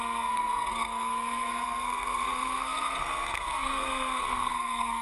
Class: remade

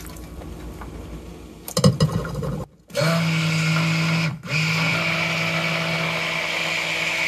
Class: recorded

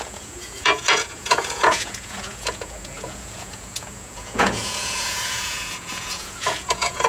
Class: remade